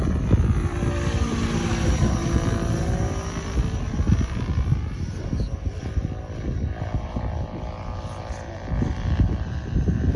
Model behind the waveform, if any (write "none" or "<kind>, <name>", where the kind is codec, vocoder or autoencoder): none